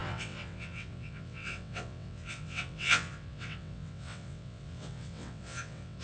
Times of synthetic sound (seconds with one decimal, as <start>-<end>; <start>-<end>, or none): 0.0-6.0